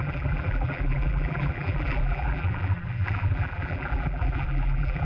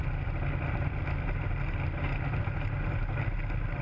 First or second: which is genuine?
second